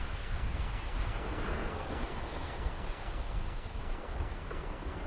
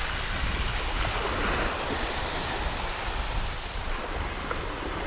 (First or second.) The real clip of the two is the second